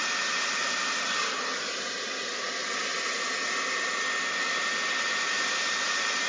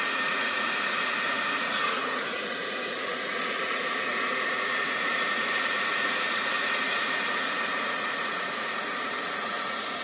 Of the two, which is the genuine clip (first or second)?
first